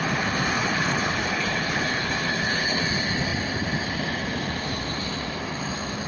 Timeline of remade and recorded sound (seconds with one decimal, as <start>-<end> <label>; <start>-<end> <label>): 0.0-0.6 recorded; 0.6-2.8 remade; 2.8-6.1 recorded